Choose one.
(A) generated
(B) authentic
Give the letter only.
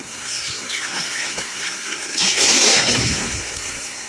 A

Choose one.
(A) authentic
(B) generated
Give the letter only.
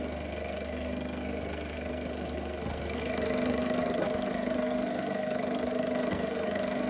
B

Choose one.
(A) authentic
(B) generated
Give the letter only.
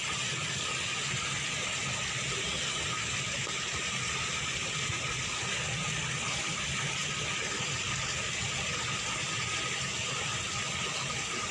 A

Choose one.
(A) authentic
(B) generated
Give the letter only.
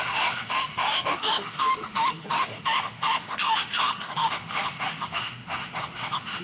B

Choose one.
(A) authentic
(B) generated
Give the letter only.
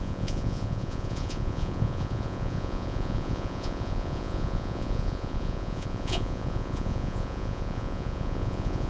B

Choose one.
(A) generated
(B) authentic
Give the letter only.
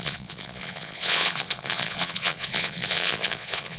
A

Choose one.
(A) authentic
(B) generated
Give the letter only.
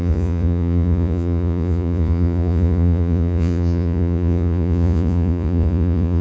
B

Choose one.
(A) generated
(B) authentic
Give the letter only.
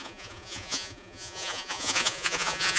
A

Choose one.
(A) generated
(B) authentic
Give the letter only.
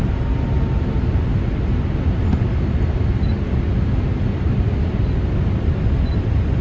B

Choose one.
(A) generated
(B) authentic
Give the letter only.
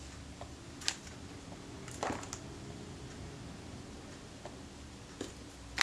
B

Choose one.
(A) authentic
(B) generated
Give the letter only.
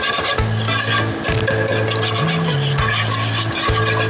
A